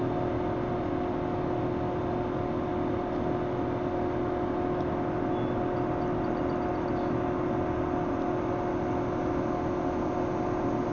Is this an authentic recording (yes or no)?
yes